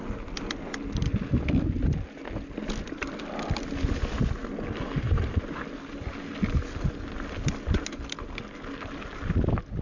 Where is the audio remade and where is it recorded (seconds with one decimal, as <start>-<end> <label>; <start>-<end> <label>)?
0.0-9.8 recorded